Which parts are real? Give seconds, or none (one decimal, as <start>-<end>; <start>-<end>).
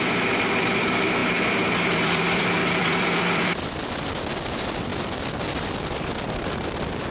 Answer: none